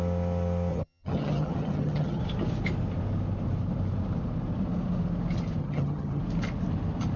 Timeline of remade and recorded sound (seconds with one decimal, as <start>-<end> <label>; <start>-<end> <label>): 0.0-0.7 recorded; 0.7-2.2 remade; 2.2-5.6 recorded; 5.6-6.2 remade; 6.2-7.2 recorded